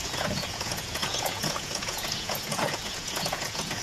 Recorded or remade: remade